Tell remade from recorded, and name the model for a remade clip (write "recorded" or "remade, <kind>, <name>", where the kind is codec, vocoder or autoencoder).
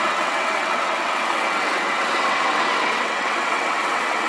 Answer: remade, vocoder, WaveNeXt